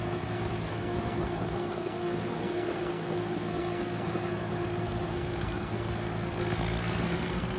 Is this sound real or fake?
fake